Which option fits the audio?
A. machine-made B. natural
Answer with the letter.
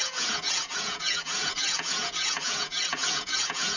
A